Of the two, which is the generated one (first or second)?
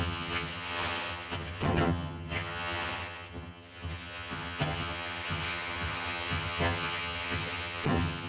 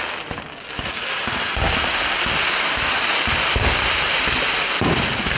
first